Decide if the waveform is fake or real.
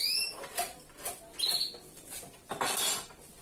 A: real